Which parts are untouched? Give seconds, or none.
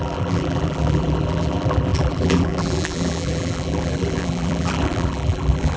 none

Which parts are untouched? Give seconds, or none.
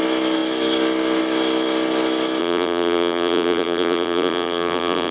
0.0-2.4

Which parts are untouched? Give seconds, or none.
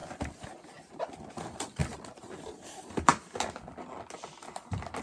0.0-1.3; 1.8-2.4; 3.1-4.1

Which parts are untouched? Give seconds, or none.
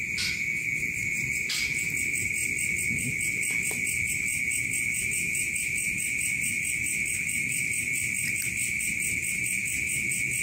0.0-7.5; 8.8-10.4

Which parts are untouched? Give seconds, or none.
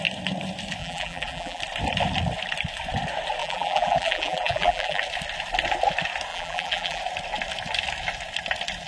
0.0-0.8; 1.6-3.4; 5.0-6.3; 7.0-8.9